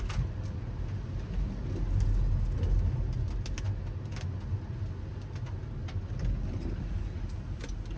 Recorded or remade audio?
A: recorded